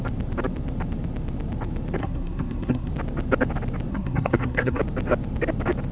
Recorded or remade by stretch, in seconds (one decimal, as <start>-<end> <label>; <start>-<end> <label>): 0.0-2.0 recorded; 2.0-2.9 remade; 2.9-3.9 recorded; 3.9-4.8 remade; 4.8-5.9 recorded